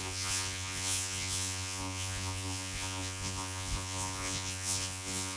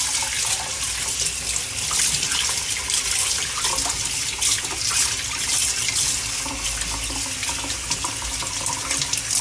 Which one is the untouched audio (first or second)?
second